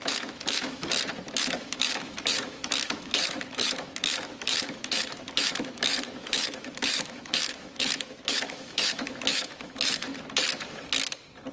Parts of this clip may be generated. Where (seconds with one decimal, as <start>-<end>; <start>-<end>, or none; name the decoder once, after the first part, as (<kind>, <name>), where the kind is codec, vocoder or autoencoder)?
0.0-0.9 (autoencoder, DAC-VAE); 1.4-10.1